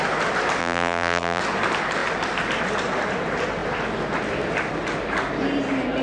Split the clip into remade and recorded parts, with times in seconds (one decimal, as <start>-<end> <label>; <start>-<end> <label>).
0.0-0.6 recorded; 0.6-1.4 remade; 1.4-6.0 recorded